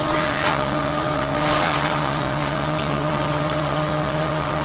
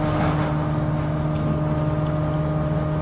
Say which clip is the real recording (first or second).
second